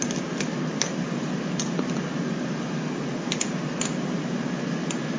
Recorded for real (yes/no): yes